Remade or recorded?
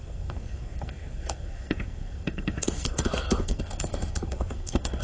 remade